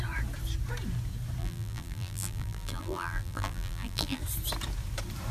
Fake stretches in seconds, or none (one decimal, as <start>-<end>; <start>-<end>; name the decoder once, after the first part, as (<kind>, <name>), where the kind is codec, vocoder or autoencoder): 1.4-4.2 (vocoder, BigVGAN v2)